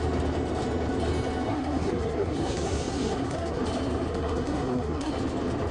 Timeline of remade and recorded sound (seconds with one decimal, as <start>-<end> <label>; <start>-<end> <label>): 0.0-1.5 recorded; 1.5-3.6 remade; 3.6-4.1 recorded; 4.1-5.1 remade; 5.1-5.7 recorded